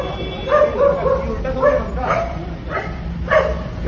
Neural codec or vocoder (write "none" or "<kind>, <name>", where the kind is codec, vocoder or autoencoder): none